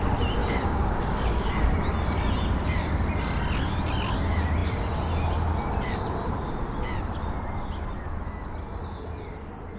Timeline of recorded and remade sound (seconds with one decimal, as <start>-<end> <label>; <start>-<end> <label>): 0.0-0.4 recorded; 0.4-1.5 remade; 1.5-9.8 recorded